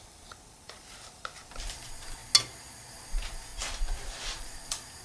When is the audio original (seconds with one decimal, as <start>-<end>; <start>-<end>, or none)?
2.2-2.9; 3.5-4.4